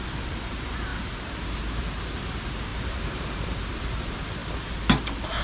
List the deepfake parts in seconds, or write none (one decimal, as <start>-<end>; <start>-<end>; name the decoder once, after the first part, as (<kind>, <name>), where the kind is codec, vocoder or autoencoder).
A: 0.0-4.4 (vocoder, BigVGAN v2)

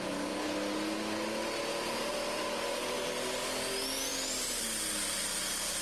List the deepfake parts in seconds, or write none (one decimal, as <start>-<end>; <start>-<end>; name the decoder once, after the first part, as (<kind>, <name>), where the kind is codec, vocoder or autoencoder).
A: 1.7-2.4 (vocoder, BigVGAN v2)